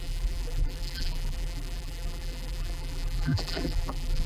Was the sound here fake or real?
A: fake